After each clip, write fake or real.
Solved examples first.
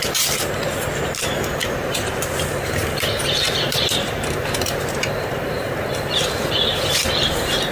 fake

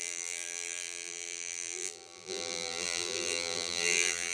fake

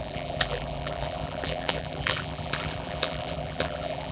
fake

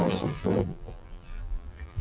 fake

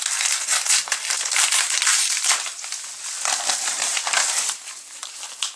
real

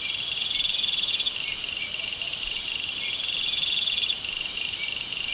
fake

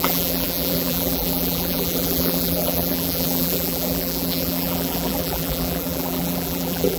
fake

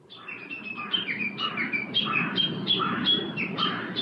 fake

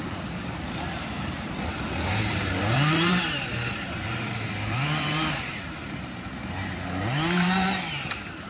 fake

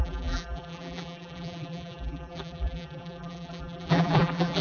fake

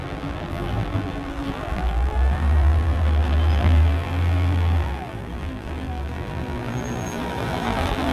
fake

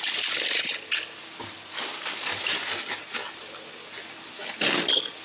real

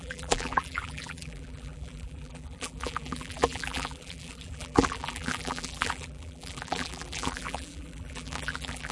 fake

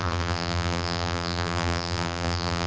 fake